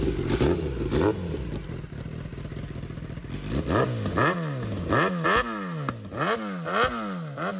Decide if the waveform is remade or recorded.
recorded